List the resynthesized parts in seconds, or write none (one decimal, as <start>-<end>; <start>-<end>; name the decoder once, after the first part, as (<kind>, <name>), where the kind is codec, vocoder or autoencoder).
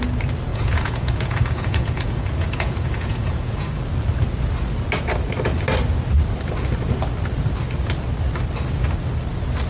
0.5-3.8 (vocoder, Vocos)